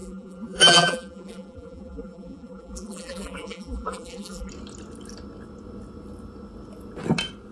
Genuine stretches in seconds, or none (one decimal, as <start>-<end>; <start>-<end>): 4.5-7.5